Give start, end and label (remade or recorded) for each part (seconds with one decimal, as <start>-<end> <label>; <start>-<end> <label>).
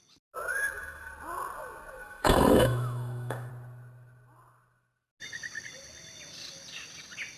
0.0-0.5 recorded; 0.5-1.1 remade; 1.1-2.0 recorded; 2.0-3.5 remade; 3.5-7.4 recorded